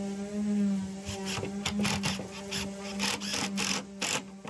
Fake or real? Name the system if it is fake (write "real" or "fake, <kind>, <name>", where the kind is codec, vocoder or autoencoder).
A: real